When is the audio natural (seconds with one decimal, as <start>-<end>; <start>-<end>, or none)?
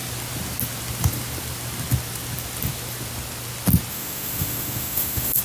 0.0-3.9